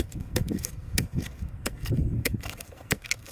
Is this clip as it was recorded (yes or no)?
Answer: no